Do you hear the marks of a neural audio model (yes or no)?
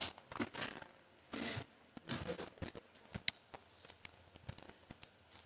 no